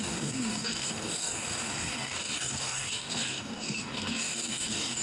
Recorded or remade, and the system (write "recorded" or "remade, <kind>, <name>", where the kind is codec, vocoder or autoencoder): remade, codec, DAC